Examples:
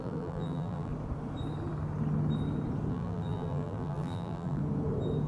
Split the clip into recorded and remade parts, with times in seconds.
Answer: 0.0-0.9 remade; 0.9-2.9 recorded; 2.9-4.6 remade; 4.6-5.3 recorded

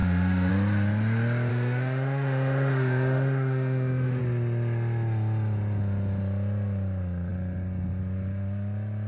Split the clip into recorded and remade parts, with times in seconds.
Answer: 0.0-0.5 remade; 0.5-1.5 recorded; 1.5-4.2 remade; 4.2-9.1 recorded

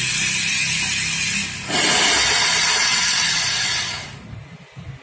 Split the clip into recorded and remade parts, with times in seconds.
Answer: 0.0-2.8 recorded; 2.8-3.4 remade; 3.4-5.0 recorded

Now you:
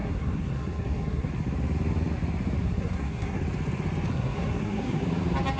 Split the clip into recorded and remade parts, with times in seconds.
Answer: 0.0-1.3 remade; 1.3-2.6 recorded; 2.6-3.4 remade; 3.4-4.1 recorded; 4.1-5.0 remade; 5.0-5.6 recorded

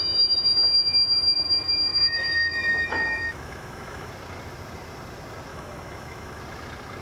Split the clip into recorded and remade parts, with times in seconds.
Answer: 0.0-1.9 recorded; 1.9-4.1 remade; 4.1-5.5 recorded; 5.5-6.4 remade; 6.4-7.0 recorded

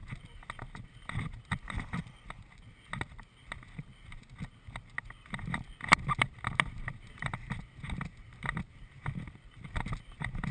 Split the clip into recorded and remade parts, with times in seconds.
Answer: 0.0-10.5 recorded

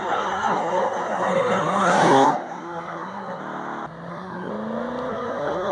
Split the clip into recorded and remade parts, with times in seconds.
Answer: 0.0-3.4 remade; 3.4-4.1 recorded; 4.1-4.5 remade; 4.5-5.1 recorded; 5.1-5.7 remade

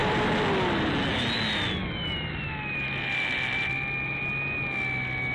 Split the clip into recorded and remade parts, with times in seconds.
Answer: 0.0-0.9 remade; 0.9-1.8 recorded; 1.8-4.2 remade; 4.2-5.3 recorded